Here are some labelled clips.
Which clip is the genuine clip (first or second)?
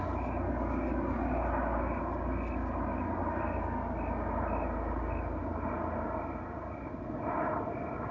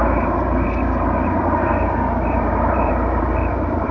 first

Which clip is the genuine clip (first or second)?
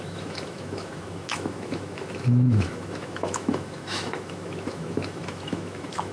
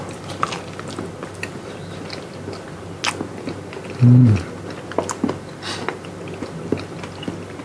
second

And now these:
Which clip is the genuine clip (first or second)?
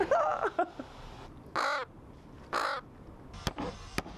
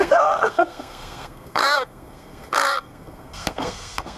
first